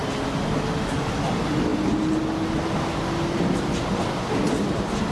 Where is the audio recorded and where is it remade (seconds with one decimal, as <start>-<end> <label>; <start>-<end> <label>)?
0.0-5.1 recorded